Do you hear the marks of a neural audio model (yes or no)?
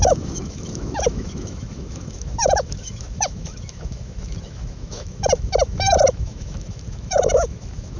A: yes